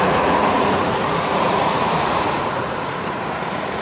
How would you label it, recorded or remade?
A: remade